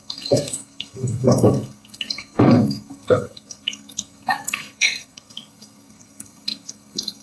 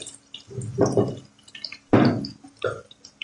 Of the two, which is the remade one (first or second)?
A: first